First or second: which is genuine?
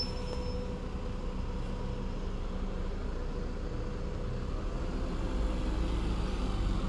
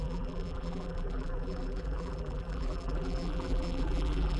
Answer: first